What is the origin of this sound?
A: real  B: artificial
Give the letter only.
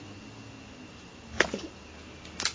A